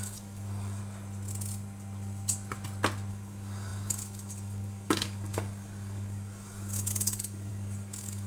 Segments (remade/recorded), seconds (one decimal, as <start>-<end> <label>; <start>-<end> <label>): 0.0-0.8 remade; 0.8-3.1 recorded; 3.1-8.3 remade